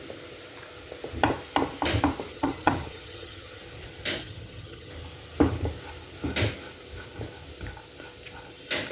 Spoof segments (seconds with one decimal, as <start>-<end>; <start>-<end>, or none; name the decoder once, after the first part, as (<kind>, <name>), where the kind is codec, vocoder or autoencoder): 2.3-3.6 (vocoder, HiFi-GAN); 4.2-4.9